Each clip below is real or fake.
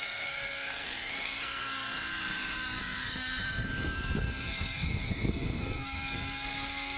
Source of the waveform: fake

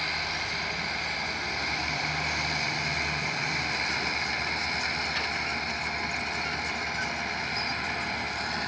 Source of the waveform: real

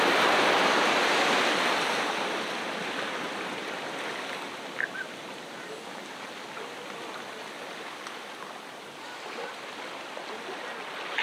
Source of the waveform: real